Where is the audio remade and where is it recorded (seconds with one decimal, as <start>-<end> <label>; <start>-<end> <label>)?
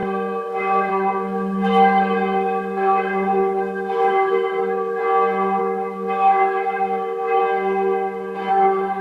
0.0-5.0 remade; 5.0-5.6 recorded; 5.6-7.4 remade; 7.4-8.5 recorded; 8.5-9.0 remade